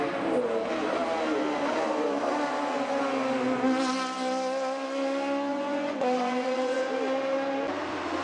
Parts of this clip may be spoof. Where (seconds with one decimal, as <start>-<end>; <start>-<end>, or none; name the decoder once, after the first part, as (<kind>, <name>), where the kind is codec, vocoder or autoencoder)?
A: 5.5-6.9 (vocoder, Vocos)